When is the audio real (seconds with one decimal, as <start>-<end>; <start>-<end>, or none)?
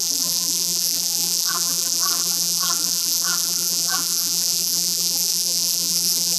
none